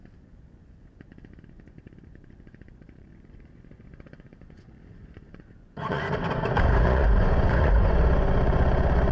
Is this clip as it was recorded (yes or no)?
no